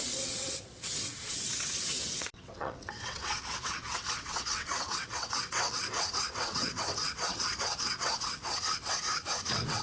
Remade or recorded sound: remade